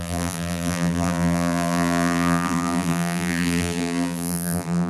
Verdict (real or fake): fake